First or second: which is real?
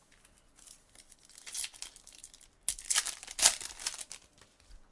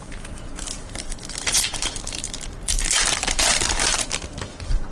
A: first